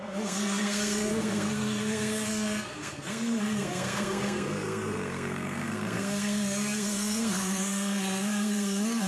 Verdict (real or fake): fake